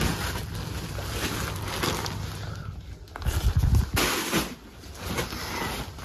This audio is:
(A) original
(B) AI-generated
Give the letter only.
A